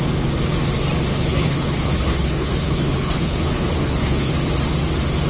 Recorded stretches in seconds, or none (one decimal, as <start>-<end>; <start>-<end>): 0.0-1.1; 4.3-5.3